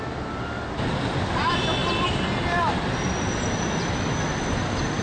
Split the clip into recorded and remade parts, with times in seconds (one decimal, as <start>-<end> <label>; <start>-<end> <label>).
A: 0.0-5.0 recorded